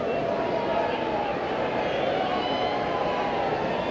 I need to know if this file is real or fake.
real